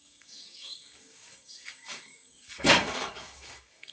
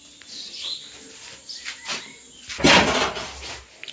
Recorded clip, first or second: second